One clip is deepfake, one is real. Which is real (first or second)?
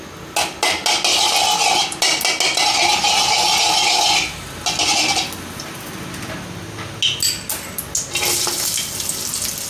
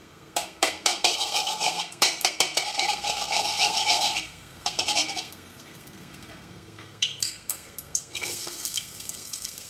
first